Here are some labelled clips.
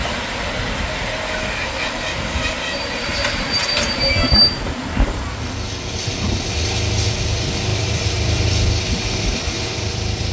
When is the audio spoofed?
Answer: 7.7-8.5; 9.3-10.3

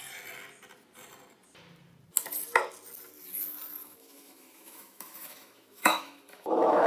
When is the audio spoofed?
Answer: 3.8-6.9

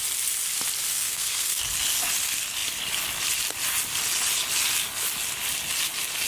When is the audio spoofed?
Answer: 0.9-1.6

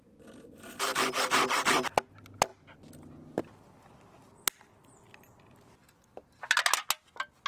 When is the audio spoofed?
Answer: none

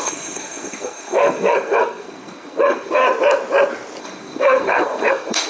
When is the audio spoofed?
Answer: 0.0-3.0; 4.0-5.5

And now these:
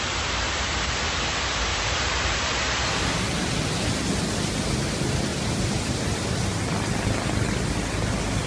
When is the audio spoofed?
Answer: 1.7-2.4; 5.3-6.6

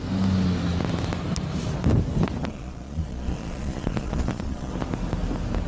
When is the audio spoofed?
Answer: 2.4-4.7